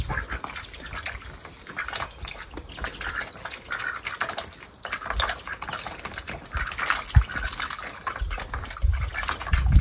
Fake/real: real